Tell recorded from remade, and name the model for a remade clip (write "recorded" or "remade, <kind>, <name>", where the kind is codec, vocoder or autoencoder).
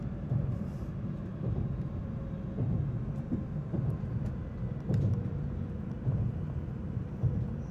recorded